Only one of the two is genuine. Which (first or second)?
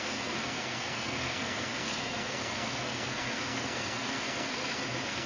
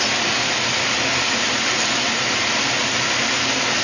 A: second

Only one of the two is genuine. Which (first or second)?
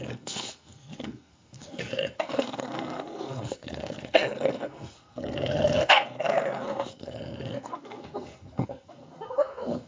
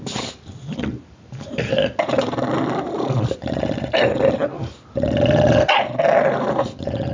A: second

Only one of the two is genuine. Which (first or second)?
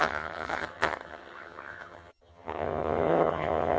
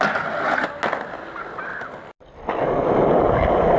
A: second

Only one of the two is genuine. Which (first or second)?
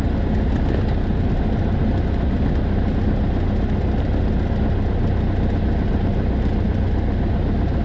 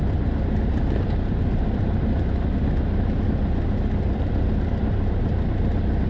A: first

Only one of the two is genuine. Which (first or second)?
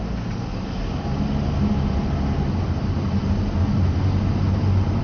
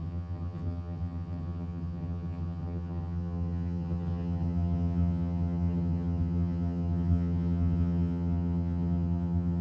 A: first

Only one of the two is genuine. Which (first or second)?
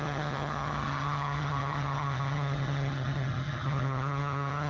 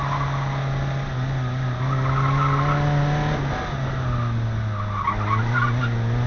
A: second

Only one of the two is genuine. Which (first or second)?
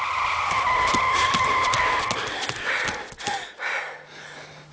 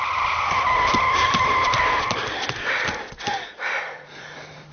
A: first